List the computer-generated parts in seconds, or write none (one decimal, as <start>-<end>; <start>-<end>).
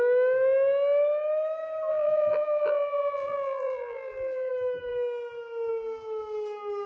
1.9-4.5